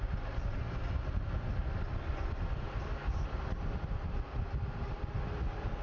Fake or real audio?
real